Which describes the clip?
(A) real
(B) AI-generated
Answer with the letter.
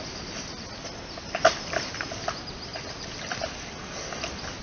A